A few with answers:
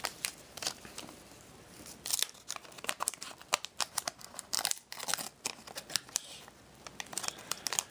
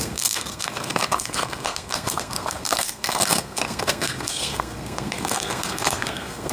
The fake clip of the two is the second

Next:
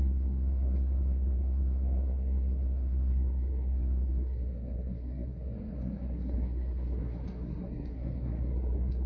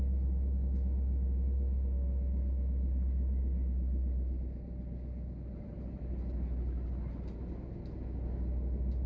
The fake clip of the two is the first